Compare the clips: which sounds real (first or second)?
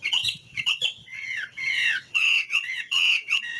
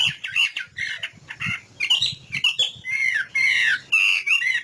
second